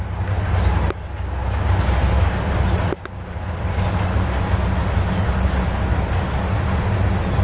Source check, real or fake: real